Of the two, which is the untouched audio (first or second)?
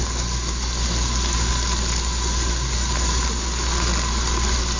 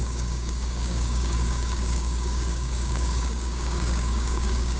first